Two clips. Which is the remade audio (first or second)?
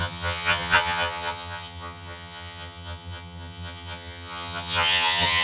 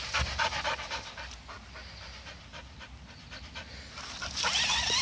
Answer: first